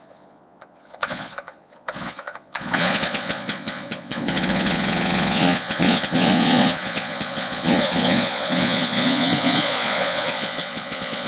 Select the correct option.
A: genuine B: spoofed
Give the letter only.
B